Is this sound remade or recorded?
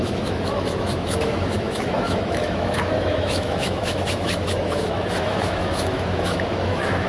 remade